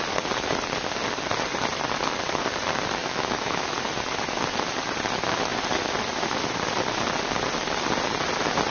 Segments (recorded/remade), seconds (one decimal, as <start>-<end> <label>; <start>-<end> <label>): 0.0-3.0 recorded; 3.0-3.7 remade; 3.7-8.7 recorded